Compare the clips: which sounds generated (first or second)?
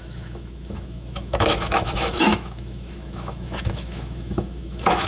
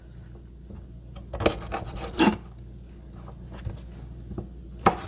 first